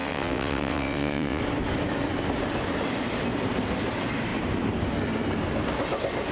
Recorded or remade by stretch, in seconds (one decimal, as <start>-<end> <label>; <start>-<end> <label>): 0.0-1.4 remade; 1.4-6.3 recorded